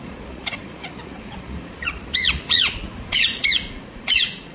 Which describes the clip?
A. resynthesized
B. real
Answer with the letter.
A